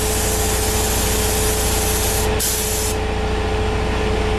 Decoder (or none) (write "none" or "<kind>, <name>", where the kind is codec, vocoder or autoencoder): none